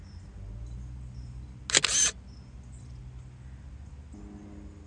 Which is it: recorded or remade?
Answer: recorded